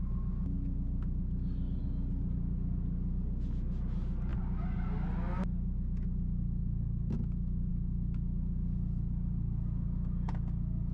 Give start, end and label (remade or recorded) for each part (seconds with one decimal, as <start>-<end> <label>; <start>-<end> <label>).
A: 0.0-10.9 recorded